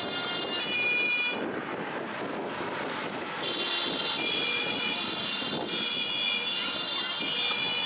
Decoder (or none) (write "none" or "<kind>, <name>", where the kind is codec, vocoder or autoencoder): none